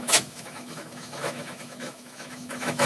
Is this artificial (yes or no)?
yes